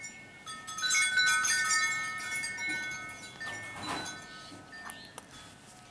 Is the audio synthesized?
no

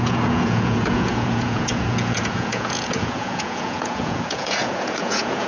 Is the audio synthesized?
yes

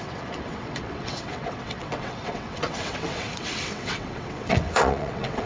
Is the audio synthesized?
yes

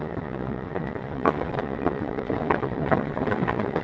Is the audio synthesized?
yes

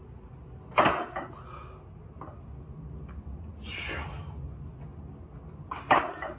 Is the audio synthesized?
no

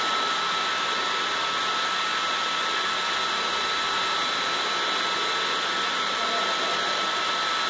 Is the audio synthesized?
no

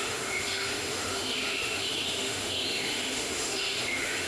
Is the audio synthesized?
yes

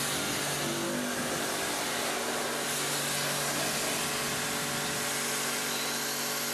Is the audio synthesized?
no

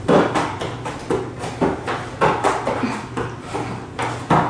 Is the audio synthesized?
no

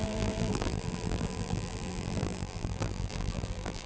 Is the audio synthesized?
yes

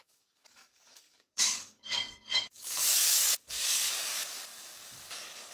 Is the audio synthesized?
yes